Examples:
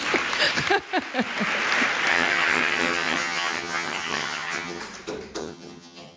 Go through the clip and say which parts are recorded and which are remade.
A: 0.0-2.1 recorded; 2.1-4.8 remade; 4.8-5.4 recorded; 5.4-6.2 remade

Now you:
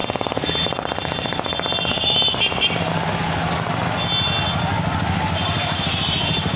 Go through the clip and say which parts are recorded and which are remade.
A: 0.0-2.9 remade; 2.9-5.4 recorded; 5.4-6.6 remade

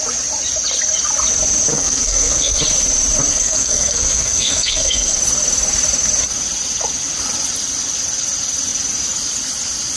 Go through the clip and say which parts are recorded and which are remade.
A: 0.0-1.7 recorded; 1.7-2.6 remade; 2.6-3.3 recorded; 3.3-5.2 remade; 5.2-10.0 recorded

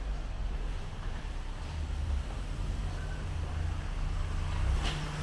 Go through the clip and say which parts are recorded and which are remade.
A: 0.0-0.4 recorded; 0.4-3.5 remade; 3.5-5.2 recorded

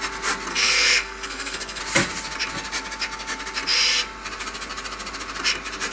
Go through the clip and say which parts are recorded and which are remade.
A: 0.0-0.5 recorded; 0.5-1.8 remade; 1.8-5.9 recorded

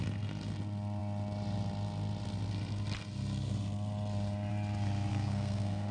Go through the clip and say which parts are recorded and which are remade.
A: 0.0-5.1 recorded; 5.1-5.9 remade